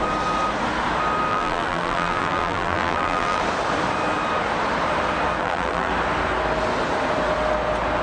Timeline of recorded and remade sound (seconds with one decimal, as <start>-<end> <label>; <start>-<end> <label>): 0.0-1.3 recorded; 1.3-3.4 remade; 3.4-5.4 recorded; 5.4-5.9 remade; 5.9-8.0 recorded